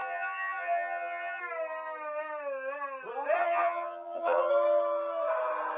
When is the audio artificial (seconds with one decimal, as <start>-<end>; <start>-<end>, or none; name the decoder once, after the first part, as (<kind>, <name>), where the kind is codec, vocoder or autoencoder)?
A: 0.0-1.4 (vocoder, HiFi-GAN); 3.4-4.5